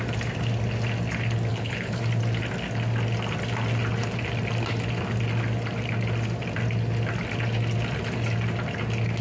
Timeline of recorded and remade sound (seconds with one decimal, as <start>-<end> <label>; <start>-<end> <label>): 0.0-1.5 recorded; 1.5-2.0 remade; 2.0-9.2 recorded

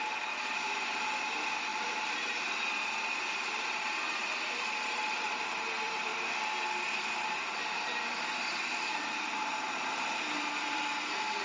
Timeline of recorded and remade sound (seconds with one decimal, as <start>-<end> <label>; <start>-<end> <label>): 0.0-6.1 remade; 6.1-7.6 recorded; 7.6-11.4 remade